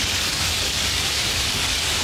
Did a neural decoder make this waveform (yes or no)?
yes